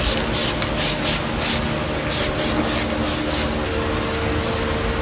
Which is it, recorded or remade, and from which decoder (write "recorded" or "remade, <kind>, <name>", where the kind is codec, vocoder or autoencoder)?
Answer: recorded